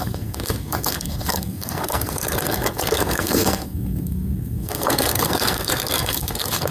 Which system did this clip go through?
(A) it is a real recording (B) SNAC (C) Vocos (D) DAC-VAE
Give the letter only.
B